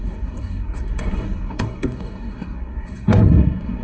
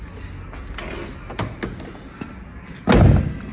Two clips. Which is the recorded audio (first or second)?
second